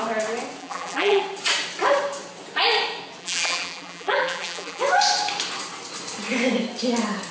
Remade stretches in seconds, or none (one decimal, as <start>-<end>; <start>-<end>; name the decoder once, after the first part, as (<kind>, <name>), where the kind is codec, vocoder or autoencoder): 0.6-1.2 (vocoder, BigVGAN v2); 3.2-4.8